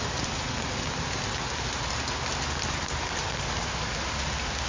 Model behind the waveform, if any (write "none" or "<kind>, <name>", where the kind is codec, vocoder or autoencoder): none